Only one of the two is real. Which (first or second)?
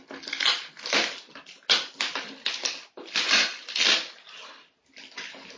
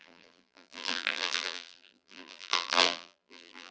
first